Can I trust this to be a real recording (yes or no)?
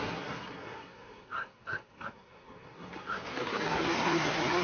no